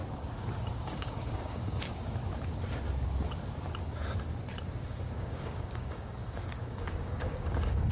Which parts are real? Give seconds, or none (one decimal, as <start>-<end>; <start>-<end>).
0.0-0.8; 2.2-4.8